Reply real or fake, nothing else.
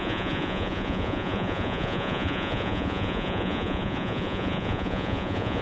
fake